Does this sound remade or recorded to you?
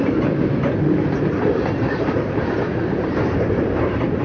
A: remade